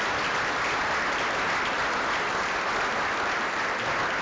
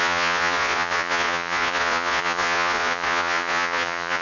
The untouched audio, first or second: first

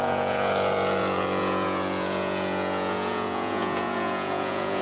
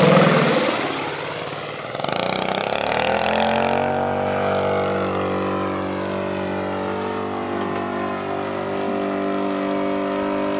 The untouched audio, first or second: second